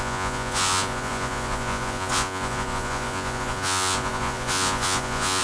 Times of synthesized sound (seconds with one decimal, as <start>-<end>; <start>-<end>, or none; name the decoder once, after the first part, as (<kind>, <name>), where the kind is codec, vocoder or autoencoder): 0.0-5.4 (vocoder, Vocos)